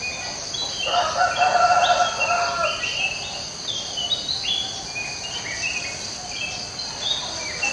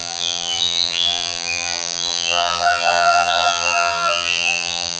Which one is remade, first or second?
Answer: second